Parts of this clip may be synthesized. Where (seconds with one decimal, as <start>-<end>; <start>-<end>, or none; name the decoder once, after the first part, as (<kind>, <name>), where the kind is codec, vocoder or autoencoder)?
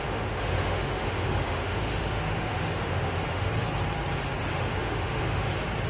0.0-3.5 (autoencoder, DAC-VAE); 4.5-5.5